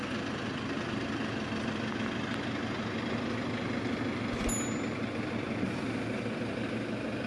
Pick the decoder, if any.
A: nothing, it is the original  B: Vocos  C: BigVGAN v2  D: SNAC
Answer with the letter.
A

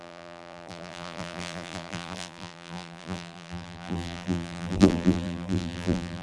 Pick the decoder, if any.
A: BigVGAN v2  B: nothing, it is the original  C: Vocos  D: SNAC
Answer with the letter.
A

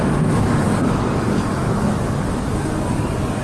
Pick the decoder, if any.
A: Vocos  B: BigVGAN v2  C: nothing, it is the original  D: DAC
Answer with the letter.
D